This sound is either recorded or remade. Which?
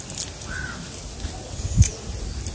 recorded